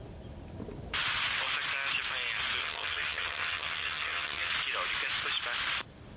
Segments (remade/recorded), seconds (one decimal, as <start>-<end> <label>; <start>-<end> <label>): 0.0-2.6 recorded; 2.6-4.5 remade; 4.5-6.2 recorded